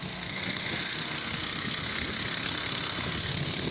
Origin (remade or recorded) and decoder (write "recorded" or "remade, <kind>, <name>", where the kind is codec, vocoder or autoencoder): remade, codec, SNAC